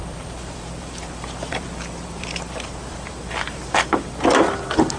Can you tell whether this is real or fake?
fake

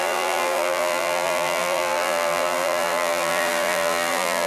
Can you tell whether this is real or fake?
fake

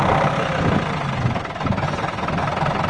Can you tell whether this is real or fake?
real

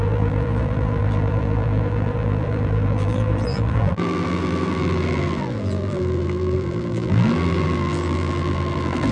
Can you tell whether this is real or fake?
fake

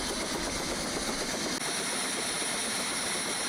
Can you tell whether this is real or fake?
real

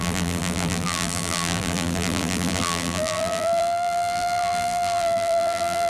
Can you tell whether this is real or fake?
fake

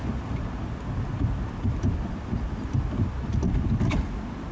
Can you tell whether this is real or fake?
real